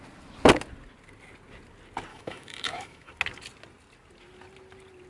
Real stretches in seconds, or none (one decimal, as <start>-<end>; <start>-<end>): 0.0-2.1; 3.1-5.1